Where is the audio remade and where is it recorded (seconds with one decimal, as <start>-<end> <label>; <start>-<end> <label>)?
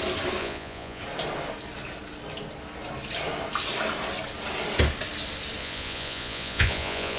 0.0-0.4 recorded; 0.4-1.0 remade; 1.0-5.6 recorded; 5.6-7.2 remade